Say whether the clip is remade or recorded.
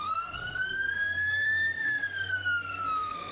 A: remade